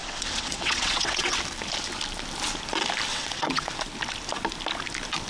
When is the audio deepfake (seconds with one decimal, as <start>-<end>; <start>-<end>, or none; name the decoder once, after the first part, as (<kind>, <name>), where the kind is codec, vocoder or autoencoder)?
0.0-1.4 (vocoder, WaveNeXt); 3.1-3.7